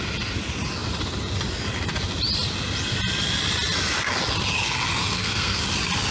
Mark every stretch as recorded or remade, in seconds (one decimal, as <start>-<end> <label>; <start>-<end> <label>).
0.0-5.0 recorded; 5.0-5.6 remade; 5.6-6.1 recorded